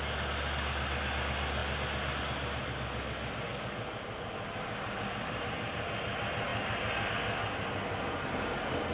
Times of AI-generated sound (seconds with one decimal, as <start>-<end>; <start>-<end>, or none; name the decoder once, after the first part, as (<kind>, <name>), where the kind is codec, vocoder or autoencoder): none